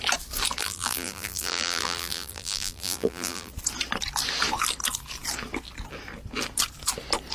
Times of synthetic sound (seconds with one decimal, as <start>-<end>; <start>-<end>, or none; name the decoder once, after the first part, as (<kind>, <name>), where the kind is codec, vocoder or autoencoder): 0.6-3.5 (vocoder, BigVGAN v2)